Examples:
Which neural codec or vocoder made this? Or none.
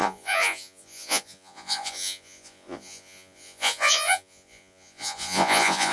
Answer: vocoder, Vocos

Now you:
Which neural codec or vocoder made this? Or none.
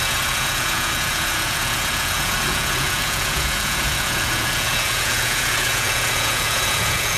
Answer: vocoder, Vocos